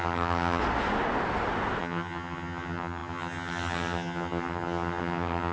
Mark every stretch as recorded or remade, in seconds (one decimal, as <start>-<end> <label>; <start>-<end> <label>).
0.0-0.6 remade; 0.6-1.8 recorded; 1.8-5.5 remade